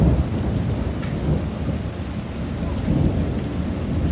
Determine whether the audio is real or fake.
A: real